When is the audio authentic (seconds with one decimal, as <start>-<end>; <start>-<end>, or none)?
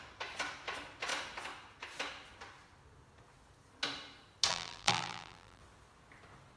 0.0-4.5; 5.6-6.6